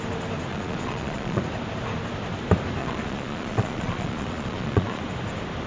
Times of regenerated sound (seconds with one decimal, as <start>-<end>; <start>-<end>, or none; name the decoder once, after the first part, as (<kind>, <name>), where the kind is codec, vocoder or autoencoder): 0.5-1.4 (vocoder, Vocos); 2.8-5.0